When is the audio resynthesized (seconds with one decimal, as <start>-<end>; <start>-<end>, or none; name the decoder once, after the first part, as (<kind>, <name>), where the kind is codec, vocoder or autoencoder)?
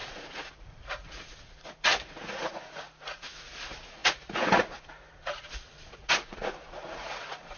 0.0-7.6 (vocoder, Vocos)